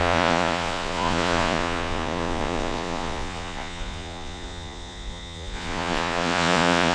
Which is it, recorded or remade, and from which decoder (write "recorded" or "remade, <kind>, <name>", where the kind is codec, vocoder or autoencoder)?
remade, vocoder, Vocos